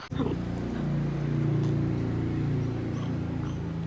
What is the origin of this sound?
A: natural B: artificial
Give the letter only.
A